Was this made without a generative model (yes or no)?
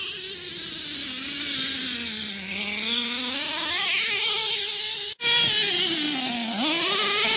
yes